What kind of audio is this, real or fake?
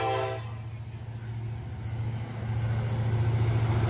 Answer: real